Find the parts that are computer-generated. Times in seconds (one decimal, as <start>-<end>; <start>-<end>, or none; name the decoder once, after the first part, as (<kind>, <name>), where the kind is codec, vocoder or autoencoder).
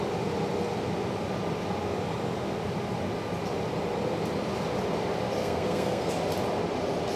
5.4-6.1 (codec, SNAC)